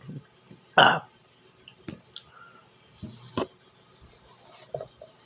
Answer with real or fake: real